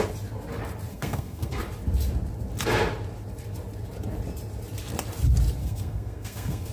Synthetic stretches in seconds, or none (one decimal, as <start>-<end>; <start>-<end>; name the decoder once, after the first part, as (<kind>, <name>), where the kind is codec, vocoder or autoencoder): 0.9-1.6 (codec, SNAC); 5.6-6.7